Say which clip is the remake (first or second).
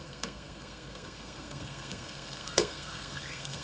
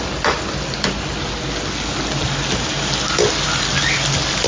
first